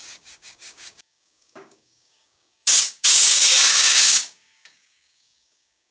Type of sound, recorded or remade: remade